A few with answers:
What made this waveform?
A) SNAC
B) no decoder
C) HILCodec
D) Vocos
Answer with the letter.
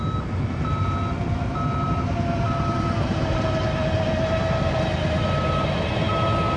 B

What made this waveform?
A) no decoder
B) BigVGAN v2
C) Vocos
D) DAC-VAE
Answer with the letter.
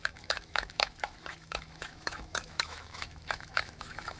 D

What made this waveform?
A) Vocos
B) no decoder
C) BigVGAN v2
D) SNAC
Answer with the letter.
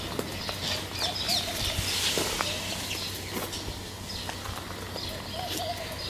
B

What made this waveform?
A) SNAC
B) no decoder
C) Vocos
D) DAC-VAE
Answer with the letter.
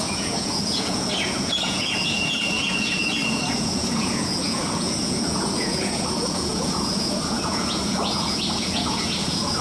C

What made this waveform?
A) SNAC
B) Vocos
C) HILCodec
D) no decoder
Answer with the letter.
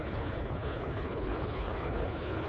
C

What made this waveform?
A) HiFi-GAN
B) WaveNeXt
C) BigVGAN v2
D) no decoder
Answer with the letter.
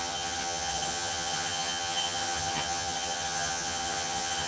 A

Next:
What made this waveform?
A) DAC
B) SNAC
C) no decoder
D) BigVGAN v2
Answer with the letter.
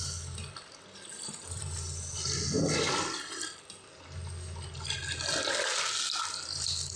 C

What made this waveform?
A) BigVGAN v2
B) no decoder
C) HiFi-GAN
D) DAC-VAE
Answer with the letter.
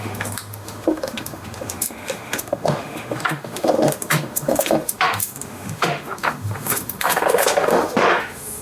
D